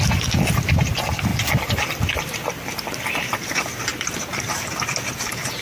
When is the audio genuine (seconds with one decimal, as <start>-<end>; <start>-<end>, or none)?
0.0-3.9; 4.5-5.6